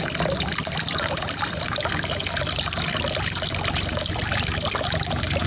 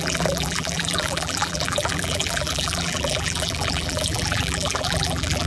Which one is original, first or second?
first